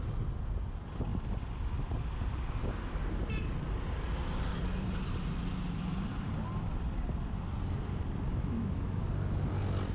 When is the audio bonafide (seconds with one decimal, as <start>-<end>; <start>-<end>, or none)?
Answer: 0.0-8.3; 9.0-9.9